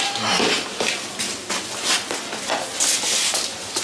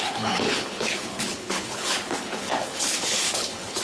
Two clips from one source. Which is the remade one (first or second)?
second